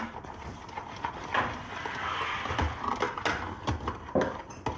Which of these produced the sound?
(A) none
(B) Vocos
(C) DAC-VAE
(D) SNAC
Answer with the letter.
A